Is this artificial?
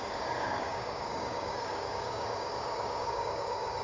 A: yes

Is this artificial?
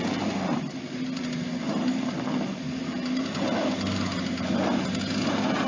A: no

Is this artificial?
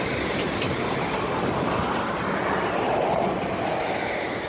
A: no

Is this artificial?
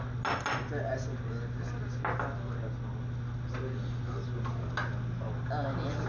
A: no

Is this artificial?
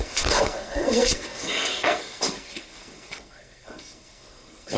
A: yes